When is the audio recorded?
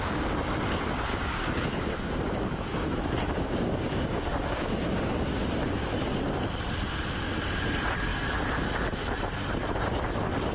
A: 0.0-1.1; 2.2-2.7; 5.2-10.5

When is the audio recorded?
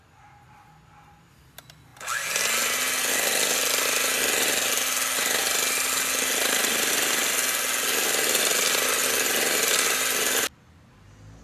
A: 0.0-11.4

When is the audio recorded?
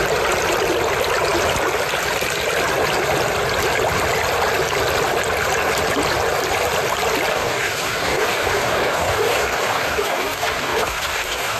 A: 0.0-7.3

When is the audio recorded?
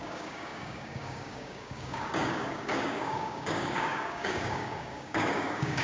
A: none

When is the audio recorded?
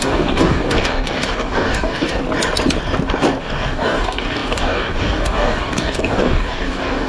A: 2.2-3.4